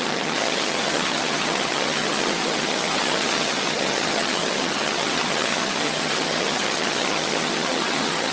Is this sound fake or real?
fake